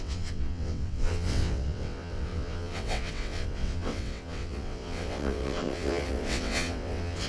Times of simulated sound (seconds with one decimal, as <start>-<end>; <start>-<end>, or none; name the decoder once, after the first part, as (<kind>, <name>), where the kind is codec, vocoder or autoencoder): 0.0-7.3 (vocoder, WaveNeXt)